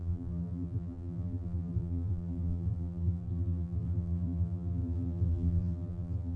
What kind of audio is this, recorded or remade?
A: remade